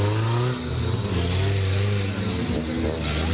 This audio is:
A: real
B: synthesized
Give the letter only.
A